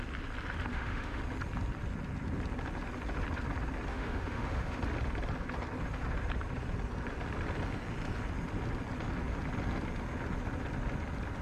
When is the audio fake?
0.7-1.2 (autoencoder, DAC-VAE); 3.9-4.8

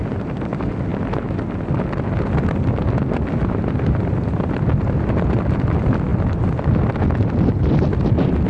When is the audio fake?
none

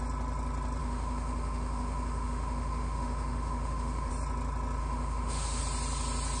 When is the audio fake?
0.8-4.1 (autoencoder, DAC-VAE); 4.8-5.6